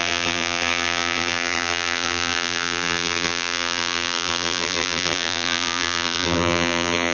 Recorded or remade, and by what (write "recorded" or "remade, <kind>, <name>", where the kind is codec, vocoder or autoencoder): remade, vocoder, BigVGAN v2